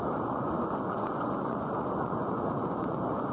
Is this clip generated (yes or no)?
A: yes